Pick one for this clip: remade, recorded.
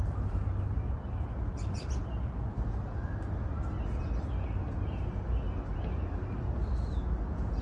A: recorded